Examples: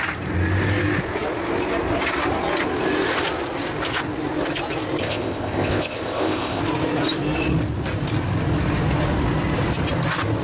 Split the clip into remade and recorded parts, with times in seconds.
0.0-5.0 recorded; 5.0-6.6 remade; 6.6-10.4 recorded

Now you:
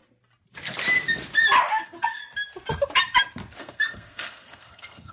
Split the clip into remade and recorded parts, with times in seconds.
0.0-1.8 recorded; 1.8-2.2 remade; 2.2-3.6 recorded; 3.6-5.1 remade

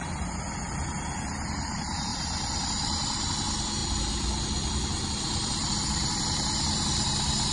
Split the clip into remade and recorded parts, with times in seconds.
0.0-2.1 recorded; 2.1-3.3 remade; 3.3-3.8 recorded; 3.8-6.2 remade; 6.2-7.5 recorded

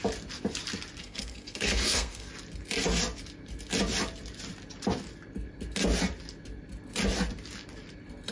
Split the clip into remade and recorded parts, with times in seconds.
0.0-1.0 recorded; 1.0-2.3 remade; 2.3-8.3 recorded

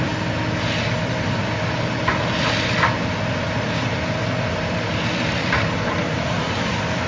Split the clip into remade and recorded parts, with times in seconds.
0.0-1.4 remade; 1.4-2.1 recorded; 2.1-7.1 remade

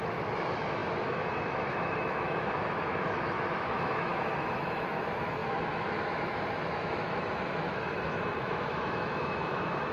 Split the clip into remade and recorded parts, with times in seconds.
0.0-9.9 remade

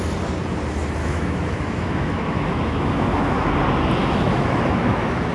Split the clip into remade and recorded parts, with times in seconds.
0.0-1.0 recorded; 1.0-3.5 remade; 3.5-4.0 recorded; 4.0-5.3 remade

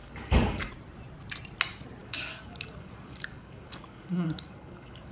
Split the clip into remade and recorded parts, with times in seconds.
0.0-0.7 remade; 0.7-2.0 recorded; 2.0-5.1 remade